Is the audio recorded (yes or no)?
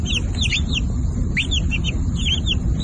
yes